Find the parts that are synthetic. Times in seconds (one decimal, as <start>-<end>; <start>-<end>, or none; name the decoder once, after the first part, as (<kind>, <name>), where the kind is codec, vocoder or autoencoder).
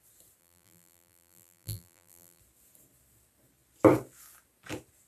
0.4-2.4 (vocoder, BigVGAN v2)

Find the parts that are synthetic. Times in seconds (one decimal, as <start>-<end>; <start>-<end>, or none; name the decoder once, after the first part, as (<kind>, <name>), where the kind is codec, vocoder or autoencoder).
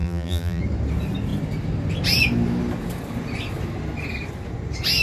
0.0-0.6 (vocoder, BigVGAN v2)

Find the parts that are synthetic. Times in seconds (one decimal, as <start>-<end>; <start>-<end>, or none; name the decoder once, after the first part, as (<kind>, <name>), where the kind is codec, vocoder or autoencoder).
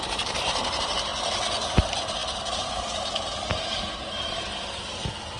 0.0-1.1 (vocoder, BigVGAN v2); 1.7-5.4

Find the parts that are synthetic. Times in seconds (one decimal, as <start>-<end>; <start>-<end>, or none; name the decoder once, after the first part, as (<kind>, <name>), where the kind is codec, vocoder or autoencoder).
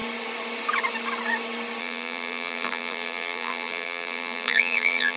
1.8-5.2 (vocoder, BigVGAN v2)